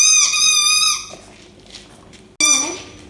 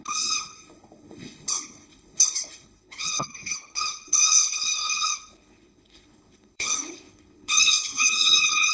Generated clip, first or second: second